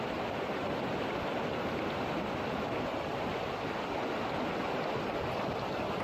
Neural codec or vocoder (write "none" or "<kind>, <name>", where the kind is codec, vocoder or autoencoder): none